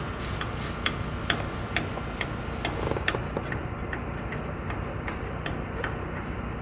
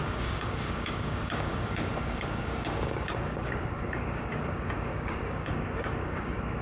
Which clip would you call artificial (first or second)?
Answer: second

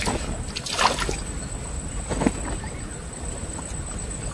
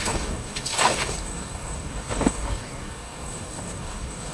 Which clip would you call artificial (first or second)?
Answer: second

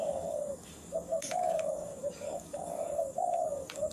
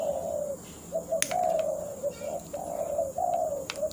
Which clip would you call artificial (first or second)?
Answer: first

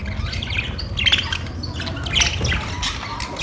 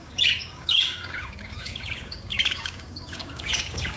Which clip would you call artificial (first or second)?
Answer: second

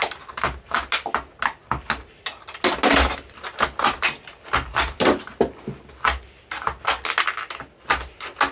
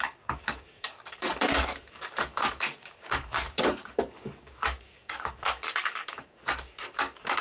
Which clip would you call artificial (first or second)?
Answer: second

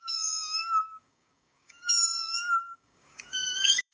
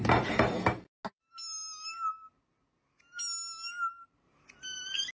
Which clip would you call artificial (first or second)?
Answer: first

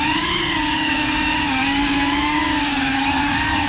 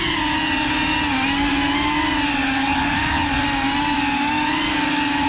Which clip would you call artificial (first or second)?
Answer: first